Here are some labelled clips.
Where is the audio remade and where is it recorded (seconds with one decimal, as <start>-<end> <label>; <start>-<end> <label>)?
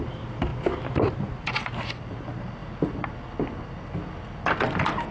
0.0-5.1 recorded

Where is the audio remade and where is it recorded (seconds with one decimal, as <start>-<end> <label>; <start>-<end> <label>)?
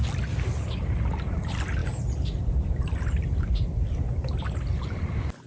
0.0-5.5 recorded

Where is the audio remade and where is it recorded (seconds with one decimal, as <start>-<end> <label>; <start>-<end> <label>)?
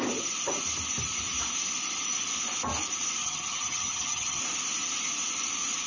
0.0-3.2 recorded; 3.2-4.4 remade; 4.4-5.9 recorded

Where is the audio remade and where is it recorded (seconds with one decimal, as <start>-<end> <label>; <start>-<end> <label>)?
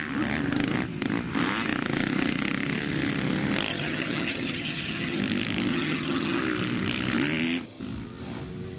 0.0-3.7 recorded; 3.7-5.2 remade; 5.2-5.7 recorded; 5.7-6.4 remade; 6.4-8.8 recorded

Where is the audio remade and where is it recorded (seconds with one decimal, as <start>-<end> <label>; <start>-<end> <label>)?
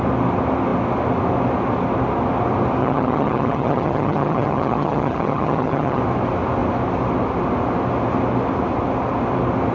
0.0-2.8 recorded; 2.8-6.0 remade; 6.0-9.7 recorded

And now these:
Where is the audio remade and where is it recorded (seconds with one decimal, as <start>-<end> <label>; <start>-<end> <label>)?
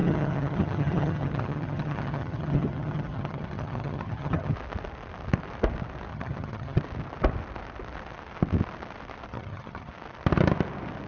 0.0-4.5 remade; 4.5-6.1 recorded; 6.1-6.8 remade; 6.8-9.3 recorded; 9.3-9.9 remade; 9.9-11.1 recorded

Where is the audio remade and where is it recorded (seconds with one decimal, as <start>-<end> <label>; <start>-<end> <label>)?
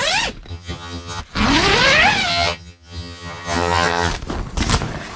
0.0-0.5 recorded; 0.5-1.2 remade; 1.2-2.3 recorded; 2.3-4.1 remade; 4.1-5.2 recorded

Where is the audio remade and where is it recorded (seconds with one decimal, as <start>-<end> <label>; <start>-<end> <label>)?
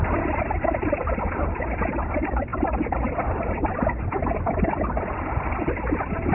0.0-6.3 recorded